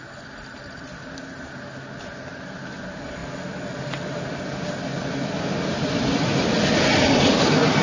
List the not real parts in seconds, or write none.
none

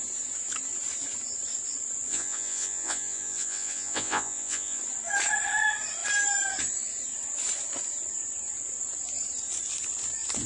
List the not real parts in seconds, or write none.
2.1-4.8 (vocoder, Vocos)

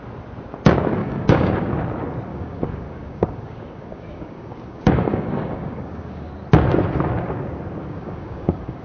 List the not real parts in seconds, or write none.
1.0-1.5 (codec, DAC); 2.3-6.3; 7.8-8.8

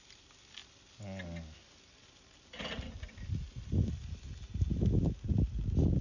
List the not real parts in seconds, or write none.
none

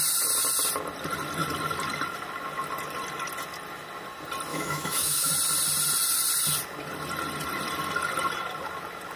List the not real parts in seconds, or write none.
4.5-5.3 (autoencoder, DAC-VAE)